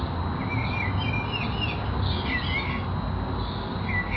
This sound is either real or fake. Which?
real